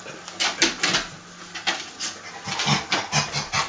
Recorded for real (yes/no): yes